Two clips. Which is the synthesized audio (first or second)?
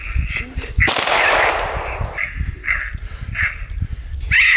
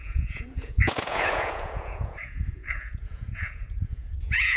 second